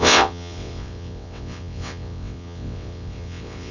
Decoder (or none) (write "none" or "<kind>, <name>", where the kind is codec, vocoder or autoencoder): vocoder, WaveNeXt